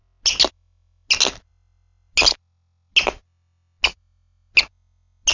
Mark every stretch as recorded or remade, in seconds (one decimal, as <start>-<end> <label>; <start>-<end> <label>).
0.0-5.3 recorded